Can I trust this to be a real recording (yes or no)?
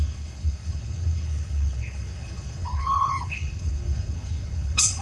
no